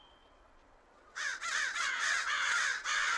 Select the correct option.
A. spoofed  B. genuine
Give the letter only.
A